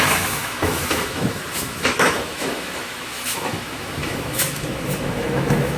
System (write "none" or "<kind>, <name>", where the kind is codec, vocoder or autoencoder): autoencoder, DAC-VAE